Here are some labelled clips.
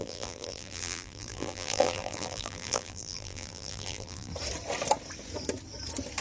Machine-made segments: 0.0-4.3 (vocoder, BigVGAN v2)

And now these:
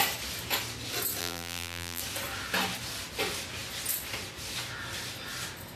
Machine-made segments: 1.2-2.0 (vocoder, BigVGAN v2)

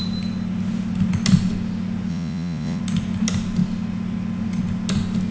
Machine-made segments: 2.1-2.8 (vocoder, Vocos)

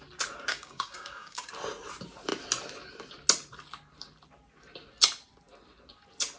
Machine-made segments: 0.5-1.5 (codec, DAC)

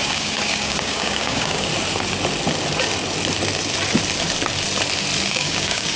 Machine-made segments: 0.0-1.7 (codec, DAC); 5.3-6.0

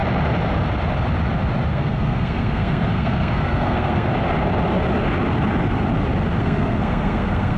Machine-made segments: 1.7-4.1 (codec, SNAC); 6.4-7.6

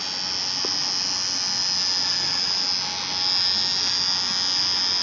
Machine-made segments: none